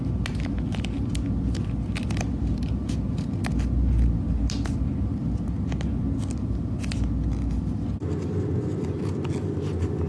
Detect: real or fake real